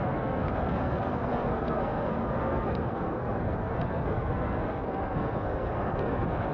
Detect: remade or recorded remade